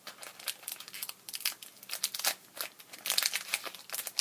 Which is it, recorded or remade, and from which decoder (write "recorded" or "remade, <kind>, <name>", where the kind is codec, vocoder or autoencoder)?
recorded